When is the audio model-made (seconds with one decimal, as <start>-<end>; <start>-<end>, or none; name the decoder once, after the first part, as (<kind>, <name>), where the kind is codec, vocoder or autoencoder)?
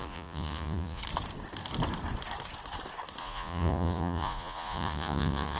0.0-1.0 (vocoder, Vocos); 3.2-5.6